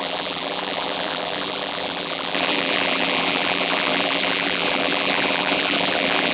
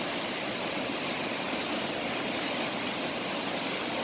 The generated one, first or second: first